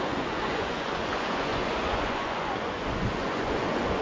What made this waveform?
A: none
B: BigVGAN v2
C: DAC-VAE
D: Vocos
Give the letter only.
D